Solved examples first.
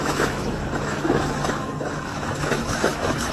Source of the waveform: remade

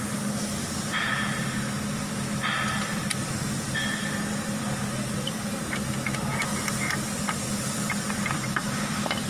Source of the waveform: recorded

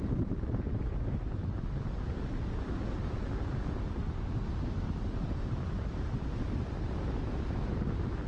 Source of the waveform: recorded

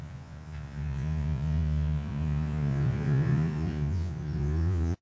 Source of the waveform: remade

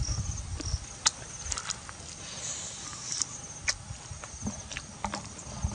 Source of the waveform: recorded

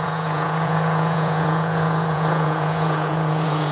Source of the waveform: remade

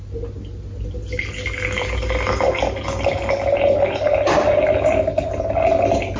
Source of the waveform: recorded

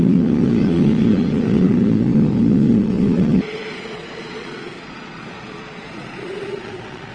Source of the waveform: remade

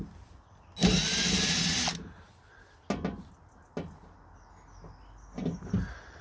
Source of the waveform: recorded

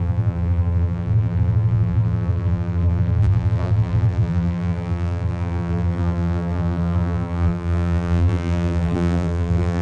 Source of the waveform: remade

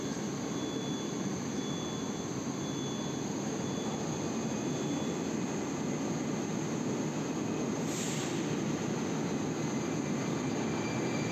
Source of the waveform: recorded